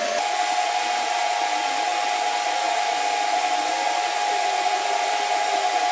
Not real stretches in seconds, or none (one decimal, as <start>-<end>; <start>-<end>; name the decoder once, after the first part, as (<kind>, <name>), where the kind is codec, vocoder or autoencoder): none

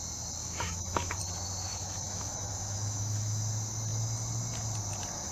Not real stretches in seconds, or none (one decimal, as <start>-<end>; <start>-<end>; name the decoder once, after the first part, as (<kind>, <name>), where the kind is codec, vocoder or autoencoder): 0.4-1.2 (autoencoder, DAC-VAE); 1.7-3.4